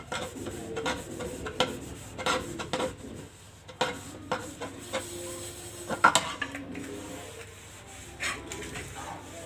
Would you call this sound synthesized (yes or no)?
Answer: no